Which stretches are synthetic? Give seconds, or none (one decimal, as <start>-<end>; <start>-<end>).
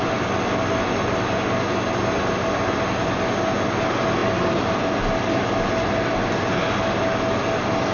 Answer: none